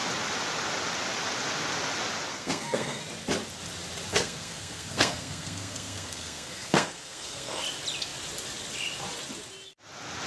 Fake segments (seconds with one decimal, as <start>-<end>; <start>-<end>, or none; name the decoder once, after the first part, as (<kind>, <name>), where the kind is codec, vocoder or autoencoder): 2.3-3.0 (codec, SNAC); 4.1-7.6